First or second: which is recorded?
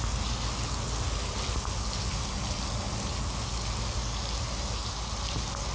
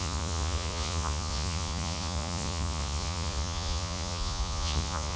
first